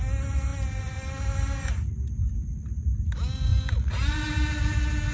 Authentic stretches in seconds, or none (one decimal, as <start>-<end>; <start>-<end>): 0.0-5.1